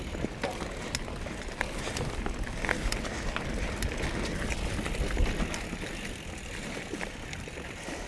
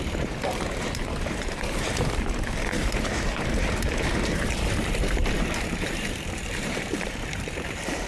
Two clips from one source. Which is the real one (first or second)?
first